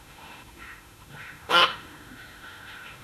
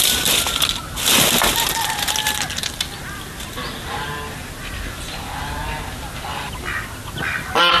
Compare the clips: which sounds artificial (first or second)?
first